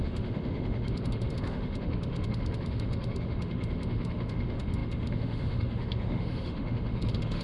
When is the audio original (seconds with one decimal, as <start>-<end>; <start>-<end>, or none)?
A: none